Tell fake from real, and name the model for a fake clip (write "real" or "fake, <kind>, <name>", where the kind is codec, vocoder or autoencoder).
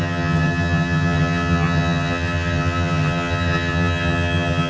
fake, vocoder, HiFi-GAN